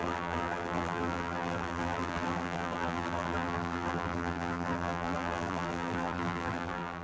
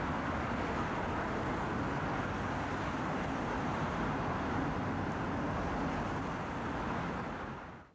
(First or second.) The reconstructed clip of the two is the first